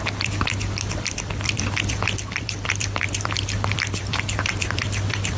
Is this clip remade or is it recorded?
remade